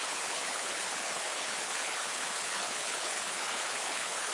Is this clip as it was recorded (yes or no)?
no